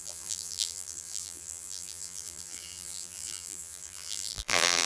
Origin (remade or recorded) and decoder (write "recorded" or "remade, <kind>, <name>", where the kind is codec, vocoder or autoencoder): remade, vocoder, BigVGAN v2